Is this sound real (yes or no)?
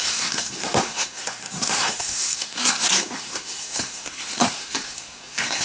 no